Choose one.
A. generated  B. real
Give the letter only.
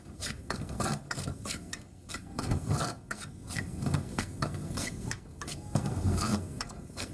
A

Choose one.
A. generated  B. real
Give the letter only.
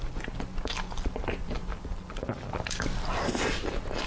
B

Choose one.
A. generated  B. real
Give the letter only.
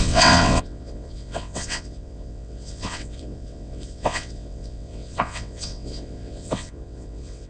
A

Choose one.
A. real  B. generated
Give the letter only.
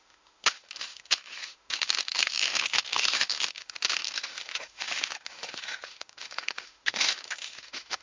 B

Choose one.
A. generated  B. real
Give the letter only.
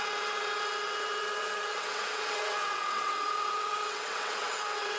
A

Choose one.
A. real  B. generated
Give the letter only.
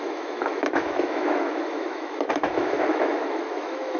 B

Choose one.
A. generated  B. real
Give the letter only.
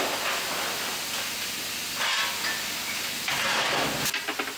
B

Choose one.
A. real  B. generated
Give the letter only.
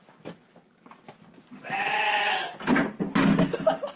A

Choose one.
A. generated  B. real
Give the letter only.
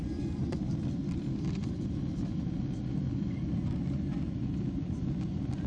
A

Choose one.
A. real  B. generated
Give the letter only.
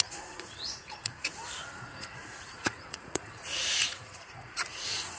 B